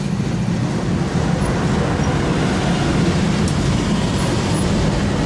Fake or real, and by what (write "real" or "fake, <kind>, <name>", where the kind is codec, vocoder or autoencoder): real